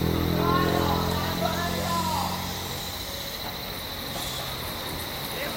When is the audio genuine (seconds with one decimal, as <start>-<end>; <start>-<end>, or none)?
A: 0.0-5.6